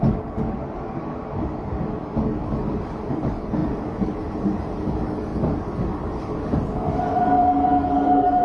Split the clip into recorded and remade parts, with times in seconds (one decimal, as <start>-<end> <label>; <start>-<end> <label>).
0.0-8.4 remade

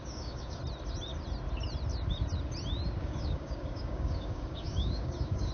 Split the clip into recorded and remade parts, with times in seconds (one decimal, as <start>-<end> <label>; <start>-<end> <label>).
0.0-0.6 remade; 0.6-3.0 recorded; 3.0-5.5 remade